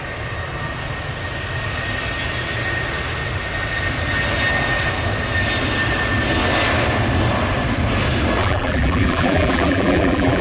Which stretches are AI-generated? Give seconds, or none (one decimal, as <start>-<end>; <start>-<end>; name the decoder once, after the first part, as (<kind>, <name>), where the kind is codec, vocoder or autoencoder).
8.4-10.4 (vocoder, BigVGAN v2)